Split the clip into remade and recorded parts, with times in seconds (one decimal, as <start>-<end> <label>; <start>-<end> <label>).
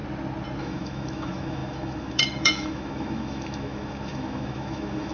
0.0-0.6 recorded; 0.6-5.1 remade